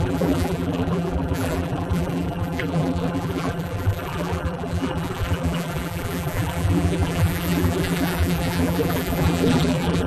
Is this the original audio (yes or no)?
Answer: no